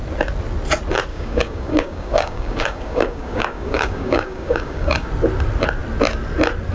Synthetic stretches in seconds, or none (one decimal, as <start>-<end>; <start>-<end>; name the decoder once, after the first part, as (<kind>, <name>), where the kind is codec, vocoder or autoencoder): 1.1-5.1 (codec, DAC)